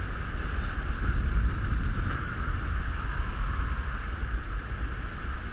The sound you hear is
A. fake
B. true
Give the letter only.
B